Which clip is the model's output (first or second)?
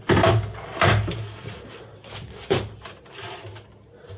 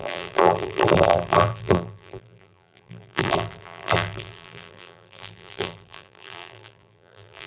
second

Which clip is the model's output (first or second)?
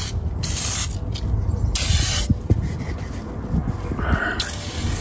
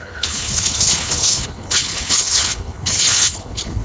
second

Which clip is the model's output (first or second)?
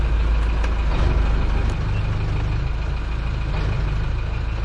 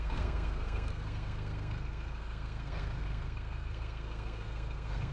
second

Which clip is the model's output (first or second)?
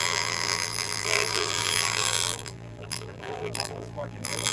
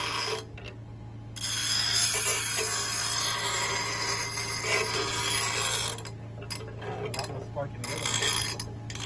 first